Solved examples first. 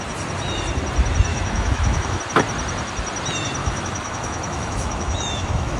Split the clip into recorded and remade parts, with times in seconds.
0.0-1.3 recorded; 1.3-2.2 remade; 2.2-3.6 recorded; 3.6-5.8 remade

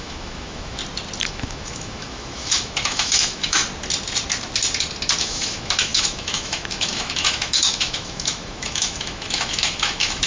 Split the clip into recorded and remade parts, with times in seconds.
0.0-0.8 remade; 0.8-1.3 recorded; 1.3-3.6 remade; 3.6-5.2 recorded; 5.2-10.3 remade

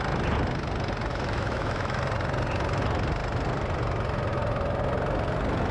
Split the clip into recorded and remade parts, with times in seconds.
0.0-1.1 recorded; 1.1-2.0 remade; 2.0-5.7 recorded

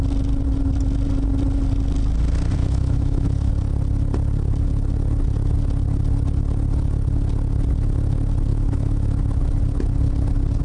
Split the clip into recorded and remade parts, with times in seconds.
0.0-2.6 recorded; 2.6-3.5 remade; 3.5-8.5 recorded; 8.5-9.1 remade; 9.1-10.6 recorded

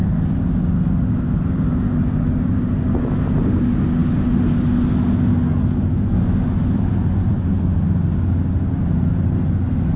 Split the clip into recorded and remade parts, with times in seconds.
0.0-10.0 recorded

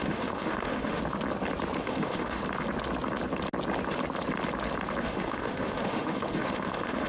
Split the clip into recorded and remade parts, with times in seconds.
0.0-1.0 remade; 1.0-1.8 recorded; 1.8-2.4 remade; 2.4-5.0 recorded; 5.0-7.1 remade

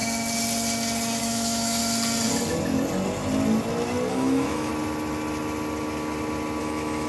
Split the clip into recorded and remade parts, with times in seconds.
0.0-1.2 recorded; 1.2-1.8 remade; 1.8-4.1 recorded; 4.1-4.7 remade; 4.7-6.6 recorded; 6.6-7.1 remade

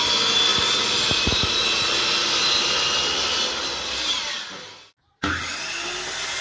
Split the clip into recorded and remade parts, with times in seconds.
0.0-6.4 recorded